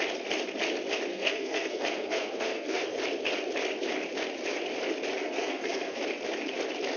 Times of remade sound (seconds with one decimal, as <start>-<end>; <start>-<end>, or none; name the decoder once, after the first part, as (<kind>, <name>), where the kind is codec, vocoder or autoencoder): 1.1-3.0 (codec, SNAC); 5.2-6.0